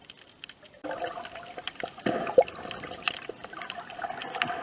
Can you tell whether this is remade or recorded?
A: remade